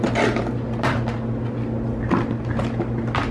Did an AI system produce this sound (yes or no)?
no